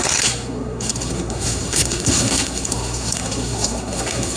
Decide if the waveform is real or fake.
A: fake